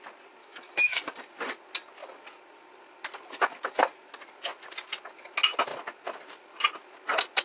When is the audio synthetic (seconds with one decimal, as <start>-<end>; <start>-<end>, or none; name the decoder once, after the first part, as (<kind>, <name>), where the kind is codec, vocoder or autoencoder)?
0.4-1.1 (autoencoder, DAC-VAE)